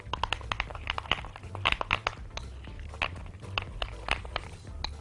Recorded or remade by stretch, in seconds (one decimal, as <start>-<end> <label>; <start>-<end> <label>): 0.0-5.0 recorded